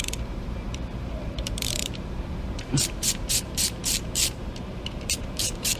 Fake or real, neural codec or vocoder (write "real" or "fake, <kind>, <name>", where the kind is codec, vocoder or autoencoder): fake, vocoder, BigVGAN v2